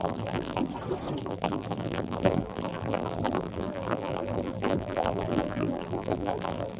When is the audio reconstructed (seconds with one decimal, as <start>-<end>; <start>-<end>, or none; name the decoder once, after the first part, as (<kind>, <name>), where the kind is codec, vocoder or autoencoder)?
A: 0.0-0.7 (vocoder, BigVGAN v2); 1.2-6.8